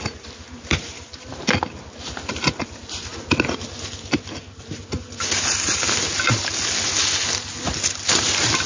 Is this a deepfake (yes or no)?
no